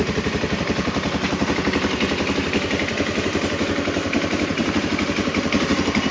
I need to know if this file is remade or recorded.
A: remade